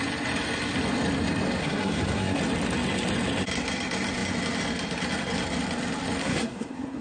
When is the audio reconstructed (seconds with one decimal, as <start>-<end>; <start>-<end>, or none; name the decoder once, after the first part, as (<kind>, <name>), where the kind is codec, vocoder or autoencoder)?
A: 1.6-2.4 (codec, SNAC); 6.2-7.0